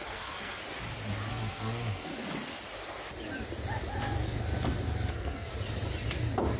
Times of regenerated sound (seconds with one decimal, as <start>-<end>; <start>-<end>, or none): 0.0-0.6; 1.3-2.1; 5.1-5.5